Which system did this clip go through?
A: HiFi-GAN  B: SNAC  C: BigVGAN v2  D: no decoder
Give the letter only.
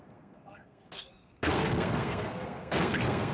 B